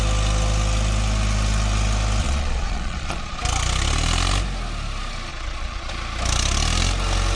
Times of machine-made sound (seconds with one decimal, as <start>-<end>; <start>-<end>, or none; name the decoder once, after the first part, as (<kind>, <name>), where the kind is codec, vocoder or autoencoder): 2.2-3.4 (vocoder, Vocos); 5.3-5.9

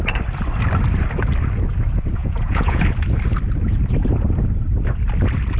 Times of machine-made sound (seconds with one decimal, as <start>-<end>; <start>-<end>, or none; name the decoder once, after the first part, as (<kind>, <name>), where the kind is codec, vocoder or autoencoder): 2.2-2.8 (vocoder, Vocos)

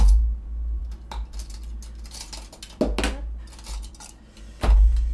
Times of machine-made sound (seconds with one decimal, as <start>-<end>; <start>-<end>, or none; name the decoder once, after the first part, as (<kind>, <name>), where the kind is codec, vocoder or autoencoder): none